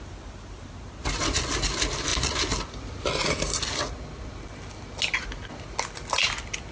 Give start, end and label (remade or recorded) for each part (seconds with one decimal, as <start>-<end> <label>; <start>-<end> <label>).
0.0-6.7 recorded